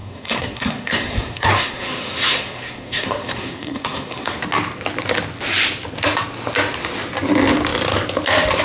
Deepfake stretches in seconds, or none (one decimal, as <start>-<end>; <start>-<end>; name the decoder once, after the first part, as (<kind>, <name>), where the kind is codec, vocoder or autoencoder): 0.0-4.4 (codec, SNAC)